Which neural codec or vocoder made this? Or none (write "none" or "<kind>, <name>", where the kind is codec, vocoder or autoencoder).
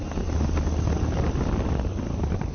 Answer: none